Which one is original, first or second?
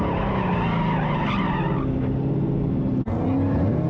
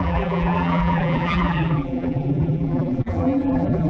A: first